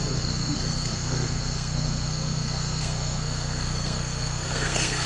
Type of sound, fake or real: fake